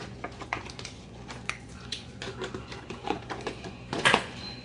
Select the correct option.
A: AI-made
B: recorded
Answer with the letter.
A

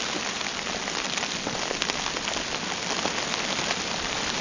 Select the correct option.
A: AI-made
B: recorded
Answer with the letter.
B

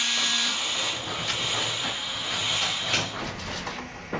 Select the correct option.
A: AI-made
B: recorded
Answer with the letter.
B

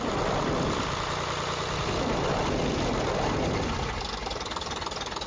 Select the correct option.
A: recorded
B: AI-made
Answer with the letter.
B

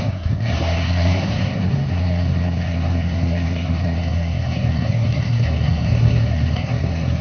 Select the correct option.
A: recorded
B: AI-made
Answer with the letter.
B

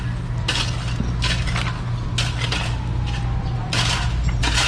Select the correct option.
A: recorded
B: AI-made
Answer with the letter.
A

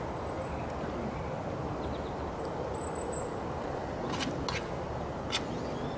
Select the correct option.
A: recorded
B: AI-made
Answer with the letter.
A